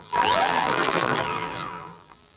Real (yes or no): no